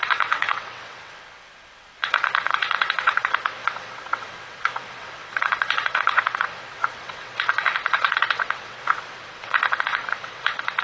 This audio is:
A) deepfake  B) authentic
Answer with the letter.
A